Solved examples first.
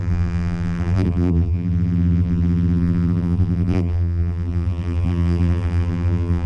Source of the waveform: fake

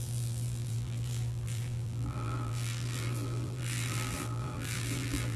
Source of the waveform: fake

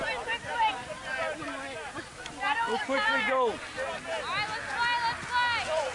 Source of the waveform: real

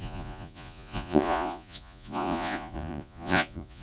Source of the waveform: fake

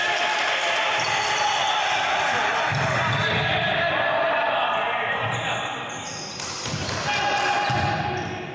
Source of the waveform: real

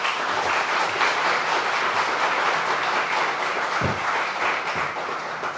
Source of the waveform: real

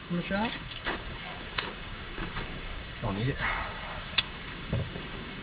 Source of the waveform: fake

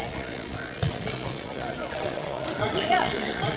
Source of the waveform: fake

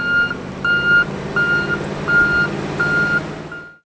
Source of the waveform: real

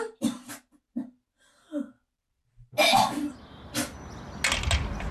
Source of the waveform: real